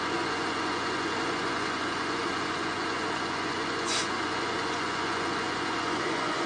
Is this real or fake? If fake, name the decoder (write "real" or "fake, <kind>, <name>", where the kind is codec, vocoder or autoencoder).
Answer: fake, vocoder, Vocos